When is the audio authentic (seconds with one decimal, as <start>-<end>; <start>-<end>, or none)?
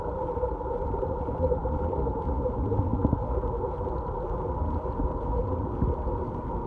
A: 0.0-6.7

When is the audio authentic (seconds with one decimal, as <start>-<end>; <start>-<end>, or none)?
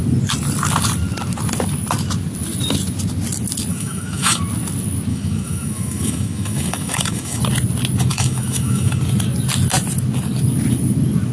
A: 0.0-3.7; 4.4-5.1; 7.4-8.1; 9.0-11.3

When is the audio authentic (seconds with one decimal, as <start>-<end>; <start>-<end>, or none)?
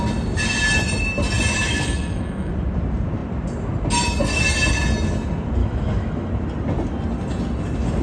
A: 0.0-1.5; 2.5-5.6; 6.3-8.0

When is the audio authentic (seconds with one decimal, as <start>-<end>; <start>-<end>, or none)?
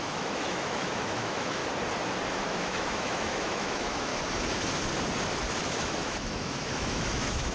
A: 1.6-2.3; 4.1-5.6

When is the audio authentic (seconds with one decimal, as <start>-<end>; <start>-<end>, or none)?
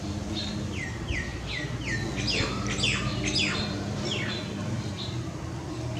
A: 0.0-6.0